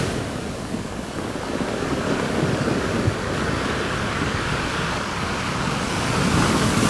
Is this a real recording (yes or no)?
no